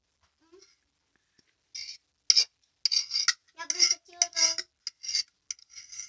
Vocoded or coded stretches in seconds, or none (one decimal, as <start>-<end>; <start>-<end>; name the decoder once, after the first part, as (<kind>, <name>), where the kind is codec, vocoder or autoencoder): none